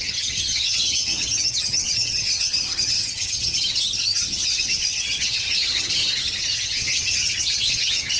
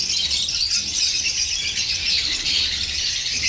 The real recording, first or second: second